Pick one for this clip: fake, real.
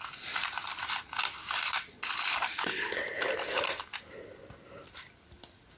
real